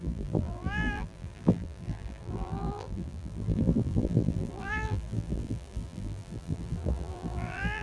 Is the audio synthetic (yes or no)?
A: yes